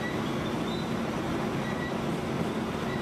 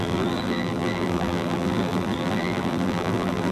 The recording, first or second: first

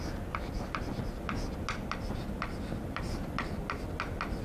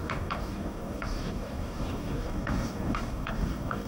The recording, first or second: first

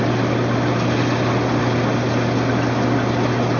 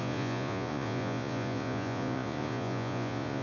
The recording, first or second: first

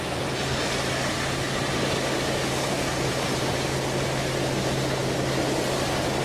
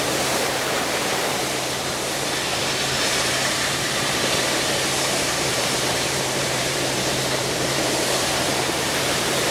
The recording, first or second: first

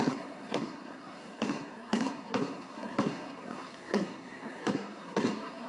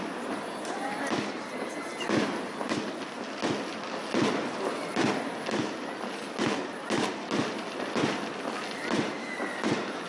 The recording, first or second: second